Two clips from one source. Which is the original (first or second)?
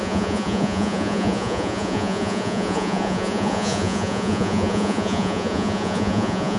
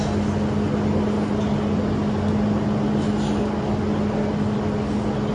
second